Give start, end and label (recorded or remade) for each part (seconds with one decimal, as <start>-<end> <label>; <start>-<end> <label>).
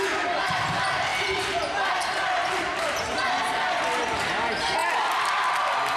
0.0-1.1 recorded; 1.1-3.0 remade; 3.0-4.8 recorded; 4.8-5.5 remade; 5.5-6.0 recorded